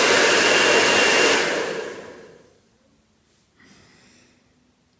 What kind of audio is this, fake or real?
real